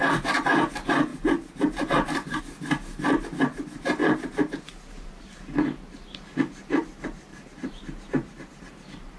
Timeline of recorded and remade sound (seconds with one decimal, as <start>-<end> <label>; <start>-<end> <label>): 0.0-1.1 recorded; 1.1-2.4 remade; 2.4-4.0 recorded; 4.0-5.2 remade; 5.2-7.3 recorded; 7.3-9.2 remade